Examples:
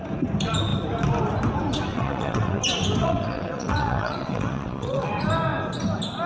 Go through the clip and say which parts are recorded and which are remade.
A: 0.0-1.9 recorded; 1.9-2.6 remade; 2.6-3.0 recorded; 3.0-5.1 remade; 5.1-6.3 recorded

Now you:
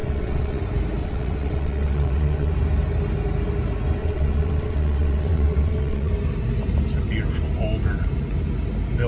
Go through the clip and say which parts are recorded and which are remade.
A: 0.0-0.6 remade; 0.6-1.0 recorded; 1.0-2.5 remade; 2.5-4.0 recorded; 4.0-6.1 remade; 6.1-9.1 recorded

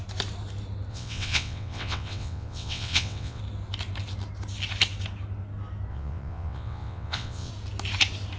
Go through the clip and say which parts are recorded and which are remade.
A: 0.0-0.9 recorded; 0.9-3.4 remade; 3.4-5.9 recorded; 5.9-7.5 remade; 7.5-8.4 recorded

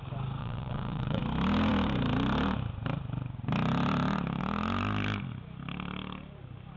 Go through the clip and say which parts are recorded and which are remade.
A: 0.0-0.4 recorded; 0.4-1.2 remade; 1.2-6.8 recorded

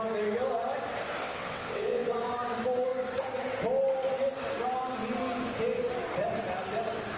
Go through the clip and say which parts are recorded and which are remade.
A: 0.0-1.2 recorded; 1.2-2.1 remade; 2.1-7.2 recorded

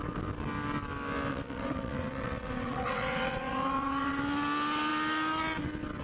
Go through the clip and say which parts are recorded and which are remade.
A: 0.0-1.3 recorded; 1.3-4.2 remade; 4.2-6.0 recorded